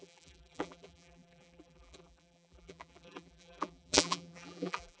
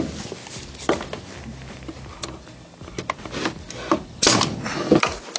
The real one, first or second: second